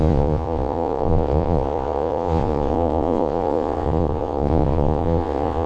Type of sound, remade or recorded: remade